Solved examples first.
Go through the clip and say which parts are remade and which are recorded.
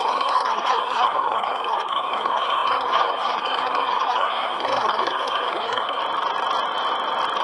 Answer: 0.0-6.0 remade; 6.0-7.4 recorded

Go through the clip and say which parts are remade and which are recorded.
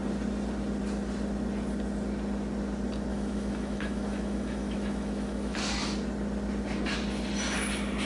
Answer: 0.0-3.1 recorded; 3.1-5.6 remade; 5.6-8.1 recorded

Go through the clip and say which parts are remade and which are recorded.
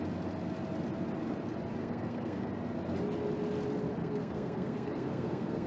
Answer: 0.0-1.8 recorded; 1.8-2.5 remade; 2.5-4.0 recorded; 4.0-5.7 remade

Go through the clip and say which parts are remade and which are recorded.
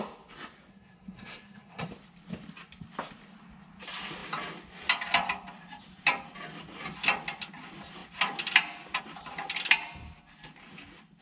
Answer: 0.0-0.7 recorded; 0.7-1.9 remade; 1.9-11.2 recorded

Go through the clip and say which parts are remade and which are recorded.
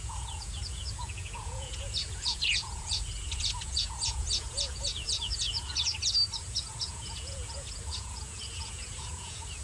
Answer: 0.0-5.9 remade; 5.9-6.4 recorded; 6.4-9.6 remade